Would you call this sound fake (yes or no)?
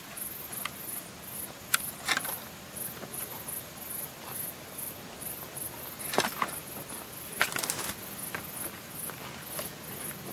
no